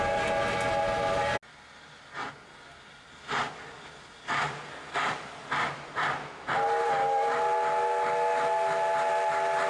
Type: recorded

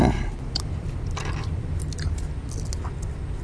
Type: recorded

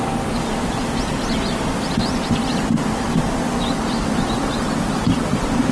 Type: recorded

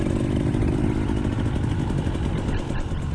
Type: recorded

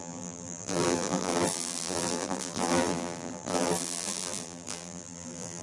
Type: remade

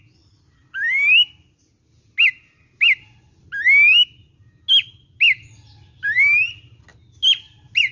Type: recorded